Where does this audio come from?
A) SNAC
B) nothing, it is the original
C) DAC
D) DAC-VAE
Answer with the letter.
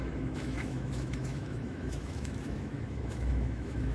D